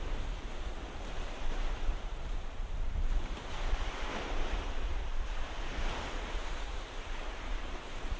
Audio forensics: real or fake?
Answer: fake